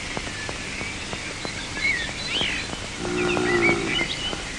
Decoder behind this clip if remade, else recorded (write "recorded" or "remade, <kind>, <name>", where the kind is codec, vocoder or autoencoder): recorded